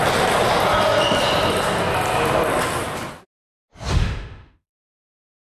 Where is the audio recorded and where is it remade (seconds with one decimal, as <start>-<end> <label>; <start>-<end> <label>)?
0.0-3.9 recorded; 3.9-4.7 remade; 4.7-5.5 recorded